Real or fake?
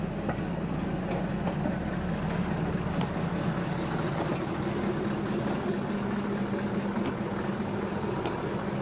real